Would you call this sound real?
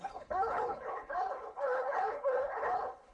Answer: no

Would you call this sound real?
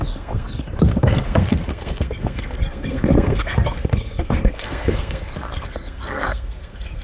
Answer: no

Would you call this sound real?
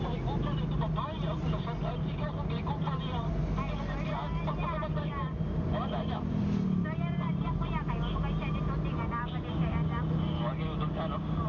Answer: yes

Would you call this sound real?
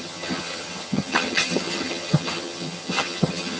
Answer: no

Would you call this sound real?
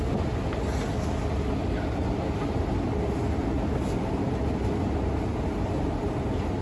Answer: yes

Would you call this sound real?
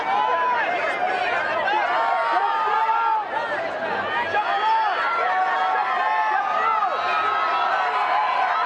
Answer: yes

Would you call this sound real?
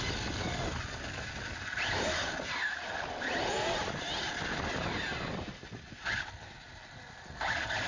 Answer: yes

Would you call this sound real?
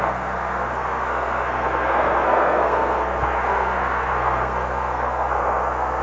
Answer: no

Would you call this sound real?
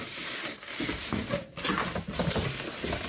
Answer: yes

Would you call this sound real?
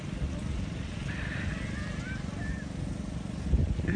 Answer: yes